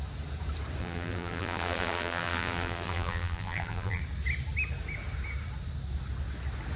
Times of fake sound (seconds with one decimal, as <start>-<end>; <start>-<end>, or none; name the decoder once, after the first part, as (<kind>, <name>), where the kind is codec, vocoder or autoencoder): 0.8-4.0 (vocoder, BigVGAN v2)